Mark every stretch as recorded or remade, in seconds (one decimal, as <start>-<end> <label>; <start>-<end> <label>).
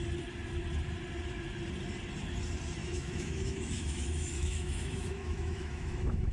0.0-2.8 recorded; 2.8-6.3 remade